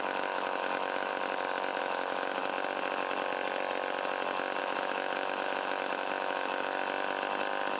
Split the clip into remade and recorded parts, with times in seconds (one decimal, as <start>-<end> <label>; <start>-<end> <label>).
0.0-1.1 remade; 1.1-1.8 recorded; 1.8-2.4 remade; 2.4-4.6 recorded; 4.6-6.8 remade; 6.8-7.8 recorded